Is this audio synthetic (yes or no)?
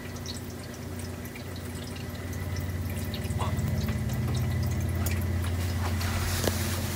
no